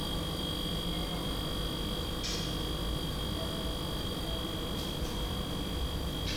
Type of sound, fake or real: real